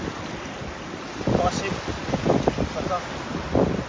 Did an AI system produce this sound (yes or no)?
no